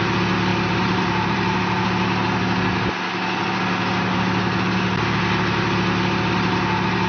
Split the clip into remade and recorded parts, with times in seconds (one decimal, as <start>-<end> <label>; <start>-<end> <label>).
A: 0.0-0.5 recorded; 0.5-1.6 remade; 1.6-7.1 recorded

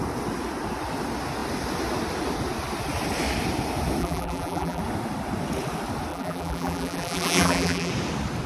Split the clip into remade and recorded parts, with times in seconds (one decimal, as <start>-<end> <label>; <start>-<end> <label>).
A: 0.0-4.0 recorded; 4.0-4.8 remade; 4.8-6.1 recorded; 6.1-7.9 remade; 7.9-8.5 recorded

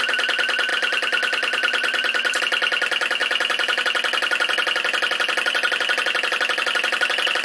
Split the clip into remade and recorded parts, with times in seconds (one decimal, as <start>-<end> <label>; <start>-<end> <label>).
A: 0.0-0.7 recorded; 0.7-2.4 remade; 2.4-3.2 recorded; 3.2-3.8 remade; 3.8-7.4 recorded